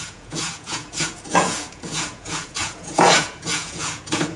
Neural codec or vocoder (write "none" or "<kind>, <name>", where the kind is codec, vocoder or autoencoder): vocoder, Vocos